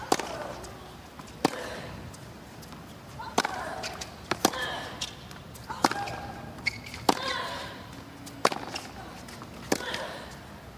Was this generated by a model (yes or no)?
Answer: no